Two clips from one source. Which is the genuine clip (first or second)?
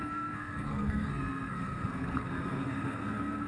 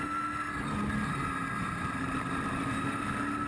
second